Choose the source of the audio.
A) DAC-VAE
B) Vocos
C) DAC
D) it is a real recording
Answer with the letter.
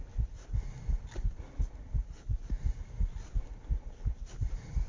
D